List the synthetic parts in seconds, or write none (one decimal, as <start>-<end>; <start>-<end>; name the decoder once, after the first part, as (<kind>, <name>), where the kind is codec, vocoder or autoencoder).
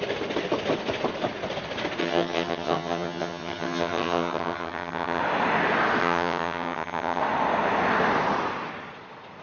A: 2.0-5.2 (vocoder, HiFi-GAN); 6.0-7.2